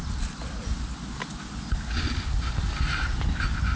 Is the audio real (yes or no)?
yes